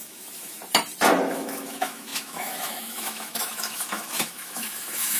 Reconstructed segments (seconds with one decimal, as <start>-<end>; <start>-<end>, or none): 0.0-0.6; 1.3-5.2